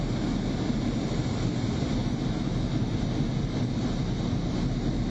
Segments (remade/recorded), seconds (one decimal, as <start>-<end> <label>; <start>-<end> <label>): 0.0-5.1 recorded